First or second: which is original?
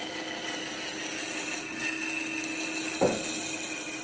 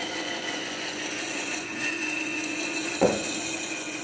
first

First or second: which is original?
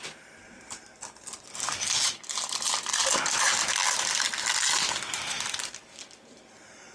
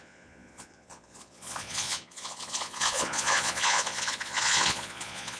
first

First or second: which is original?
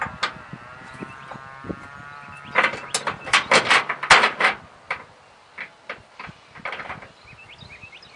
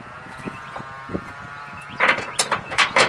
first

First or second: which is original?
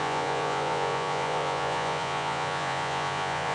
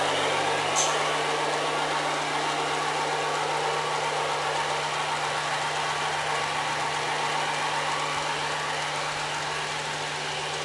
second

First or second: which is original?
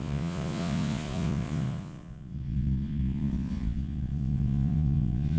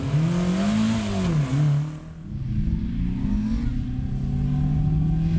second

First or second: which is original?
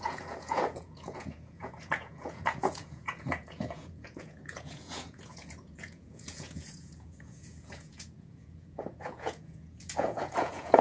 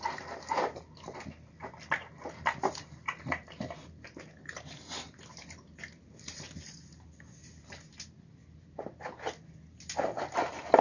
second